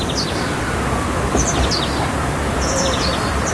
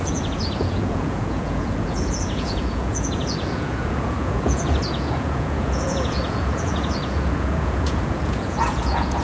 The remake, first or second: second